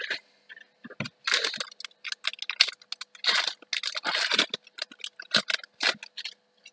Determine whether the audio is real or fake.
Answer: real